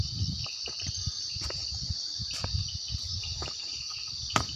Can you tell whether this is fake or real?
real